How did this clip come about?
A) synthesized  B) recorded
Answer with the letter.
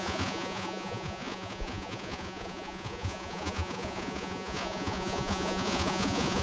A